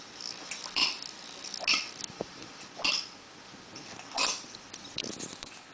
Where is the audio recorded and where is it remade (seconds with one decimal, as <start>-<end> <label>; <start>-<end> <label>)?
0.0-5.7 recorded